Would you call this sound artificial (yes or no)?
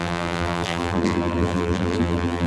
yes